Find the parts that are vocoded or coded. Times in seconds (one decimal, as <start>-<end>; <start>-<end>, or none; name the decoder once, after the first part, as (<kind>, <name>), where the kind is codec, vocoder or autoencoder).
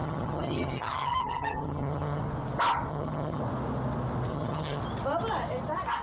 0.0-2.2 (vocoder, HiFi-GAN); 2.9-3.4; 4.3-4.8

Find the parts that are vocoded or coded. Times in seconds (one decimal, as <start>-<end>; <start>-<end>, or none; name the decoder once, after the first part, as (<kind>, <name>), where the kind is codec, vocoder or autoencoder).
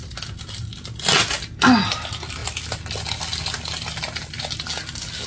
none